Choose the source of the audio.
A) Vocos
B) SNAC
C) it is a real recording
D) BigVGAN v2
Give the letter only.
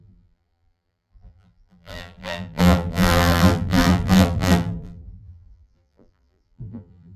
D